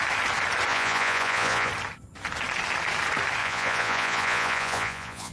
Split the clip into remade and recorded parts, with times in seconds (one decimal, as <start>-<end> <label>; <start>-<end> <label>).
0.0-0.7 recorded; 0.7-1.7 remade; 1.7-3.4 recorded; 3.4-5.3 remade